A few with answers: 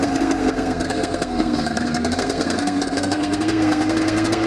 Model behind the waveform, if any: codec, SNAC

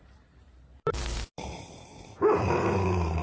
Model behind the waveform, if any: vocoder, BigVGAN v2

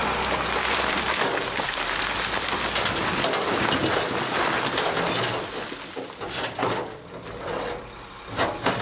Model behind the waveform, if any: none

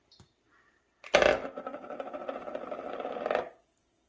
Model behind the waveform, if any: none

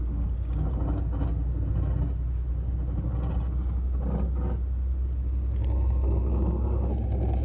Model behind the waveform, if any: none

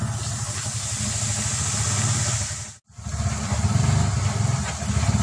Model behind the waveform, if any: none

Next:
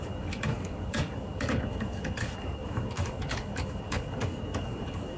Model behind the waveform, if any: codec, DAC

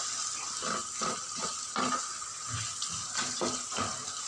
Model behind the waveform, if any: none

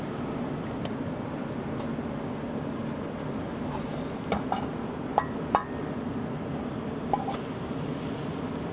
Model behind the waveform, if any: none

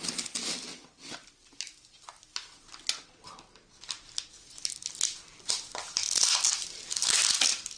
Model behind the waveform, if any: none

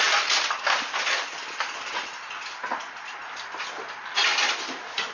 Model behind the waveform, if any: none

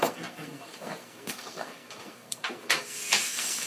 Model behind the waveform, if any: codec, SNAC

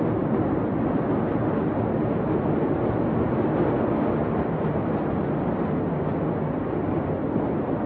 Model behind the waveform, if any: none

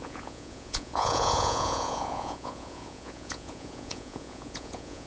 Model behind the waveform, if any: vocoder, Vocos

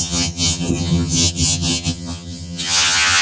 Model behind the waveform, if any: vocoder, HiFi-GAN